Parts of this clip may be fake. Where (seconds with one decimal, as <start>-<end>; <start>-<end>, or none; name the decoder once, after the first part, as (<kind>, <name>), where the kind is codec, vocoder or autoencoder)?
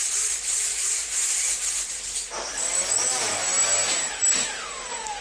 0.0-3.3 (vocoder, BigVGAN v2); 4.3-5.2